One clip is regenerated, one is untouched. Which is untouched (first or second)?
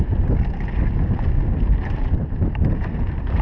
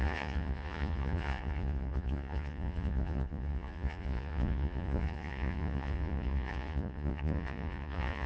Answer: first